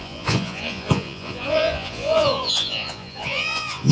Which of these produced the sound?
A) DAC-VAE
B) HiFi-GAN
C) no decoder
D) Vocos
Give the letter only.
D